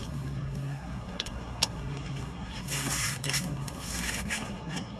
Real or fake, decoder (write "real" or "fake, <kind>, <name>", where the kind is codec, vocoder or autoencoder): fake, codec, SNAC